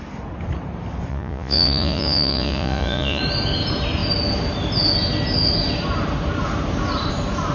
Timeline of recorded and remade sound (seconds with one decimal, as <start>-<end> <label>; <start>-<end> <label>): 0.0-1.1 recorded; 1.1-3.2 remade; 3.2-7.5 recorded